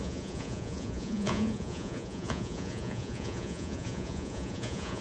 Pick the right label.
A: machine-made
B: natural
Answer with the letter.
A